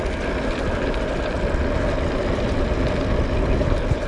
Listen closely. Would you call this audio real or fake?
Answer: real